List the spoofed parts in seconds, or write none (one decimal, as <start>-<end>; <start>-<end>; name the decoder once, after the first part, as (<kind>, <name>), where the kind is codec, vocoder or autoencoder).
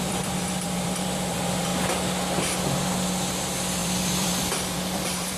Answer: 0.0-1.7 (vocoder, BigVGAN v2); 3.3-5.4